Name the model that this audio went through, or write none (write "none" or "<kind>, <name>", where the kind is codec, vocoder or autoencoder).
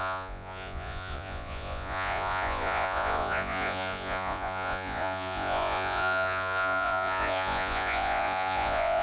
vocoder, Vocos